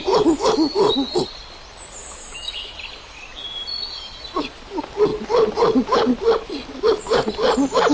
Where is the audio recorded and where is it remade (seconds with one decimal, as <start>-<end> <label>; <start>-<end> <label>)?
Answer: 0.0-2.0 recorded; 2.0-2.7 remade; 2.7-7.9 recorded